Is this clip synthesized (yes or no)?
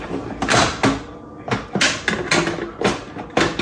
no